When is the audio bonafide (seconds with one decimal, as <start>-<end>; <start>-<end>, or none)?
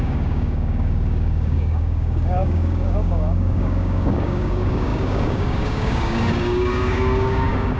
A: none